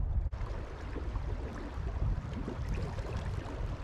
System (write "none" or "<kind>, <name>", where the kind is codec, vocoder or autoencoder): none